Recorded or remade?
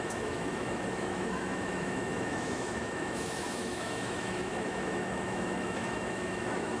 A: remade